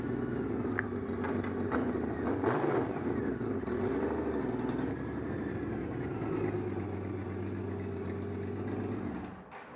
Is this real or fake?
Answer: real